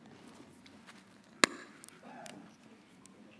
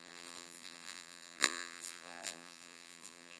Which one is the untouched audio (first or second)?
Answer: first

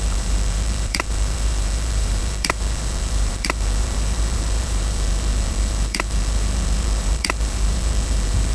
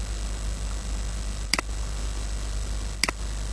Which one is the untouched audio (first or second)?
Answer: second